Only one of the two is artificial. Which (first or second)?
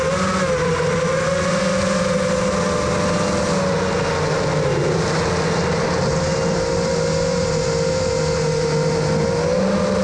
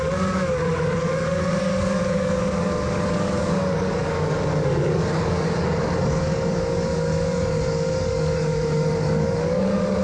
second